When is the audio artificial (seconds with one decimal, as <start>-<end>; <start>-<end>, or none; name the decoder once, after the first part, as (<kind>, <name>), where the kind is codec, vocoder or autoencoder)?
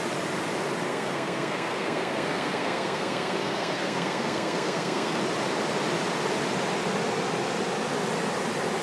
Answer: 0.9-5.2 (codec, SNAC)